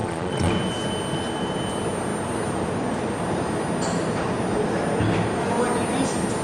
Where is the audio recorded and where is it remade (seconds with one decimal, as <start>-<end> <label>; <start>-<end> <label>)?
0.0-0.5 remade; 0.5-6.4 recorded